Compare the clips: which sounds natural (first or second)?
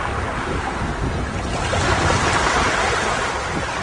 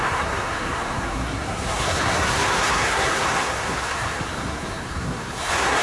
first